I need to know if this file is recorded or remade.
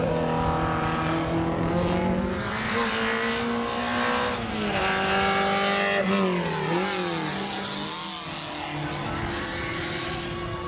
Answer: recorded